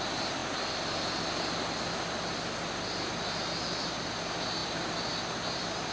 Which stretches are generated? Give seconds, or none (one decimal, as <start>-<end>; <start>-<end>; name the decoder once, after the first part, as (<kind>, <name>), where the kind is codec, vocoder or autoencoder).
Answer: 0.0-5.9 (vocoder, BigVGAN v2)